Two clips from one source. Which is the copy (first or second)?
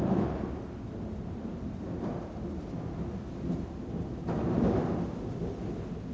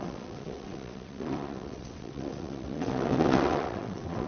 second